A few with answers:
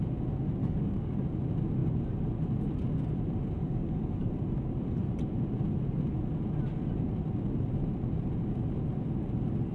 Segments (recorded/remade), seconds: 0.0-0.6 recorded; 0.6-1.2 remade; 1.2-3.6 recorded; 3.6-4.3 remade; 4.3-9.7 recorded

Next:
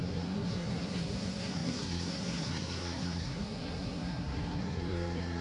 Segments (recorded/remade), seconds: 0.0-5.4 remade

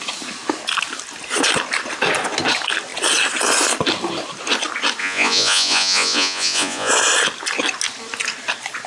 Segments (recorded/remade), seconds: 0.0-5.0 recorded; 5.0-6.9 remade; 6.9-8.9 recorded

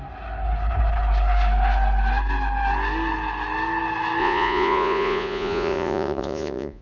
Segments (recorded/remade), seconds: 0.0-4.2 recorded; 4.2-6.8 remade

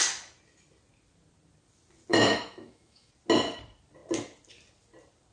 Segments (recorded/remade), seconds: 0.0-2.1 recorded; 2.1-3.1 remade; 3.1-5.3 recorded